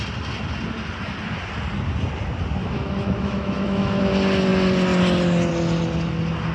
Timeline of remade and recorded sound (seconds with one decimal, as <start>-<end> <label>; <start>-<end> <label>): 0.0-2.6 recorded; 2.6-4.0 remade; 4.0-6.5 recorded

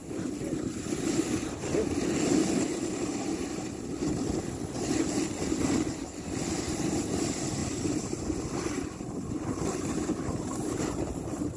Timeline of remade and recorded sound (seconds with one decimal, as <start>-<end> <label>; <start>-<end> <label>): 0.0-1.6 remade; 1.6-7.6 recorded; 7.6-10.1 remade; 10.1-11.6 recorded

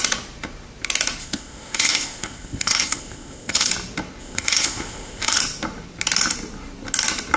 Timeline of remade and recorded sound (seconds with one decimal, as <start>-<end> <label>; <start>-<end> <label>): 0.0-1.2 recorded; 1.2-3.7 remade; 3.7-4.2 recorded; 4.2-5.4 remade; 5.4-7.4 recorded

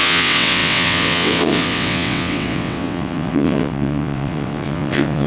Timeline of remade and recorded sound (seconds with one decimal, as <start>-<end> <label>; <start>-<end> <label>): 0.0-5.3 remade

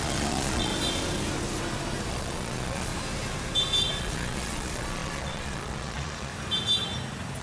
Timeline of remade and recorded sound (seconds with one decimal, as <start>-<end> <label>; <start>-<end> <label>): 0.0-0.7 remade; 0.7-2.1 recorded; 2.1-2.9 remade; 2.9-4.0 recorded; 4.0-6.3 remade; 6.3-7.4 recorded